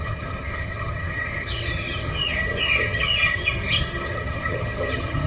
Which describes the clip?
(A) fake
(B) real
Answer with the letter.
A